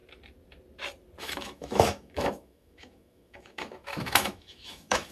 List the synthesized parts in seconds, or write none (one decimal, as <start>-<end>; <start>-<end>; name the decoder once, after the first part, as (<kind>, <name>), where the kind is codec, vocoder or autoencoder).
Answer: 1.2-5.1 (autoencoder, DAC-VAE)